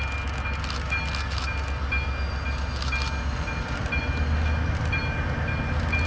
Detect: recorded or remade recorded